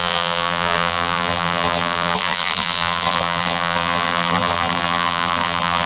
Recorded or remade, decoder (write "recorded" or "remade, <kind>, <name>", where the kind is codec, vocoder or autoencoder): remade, vocoder, BigVGAN v2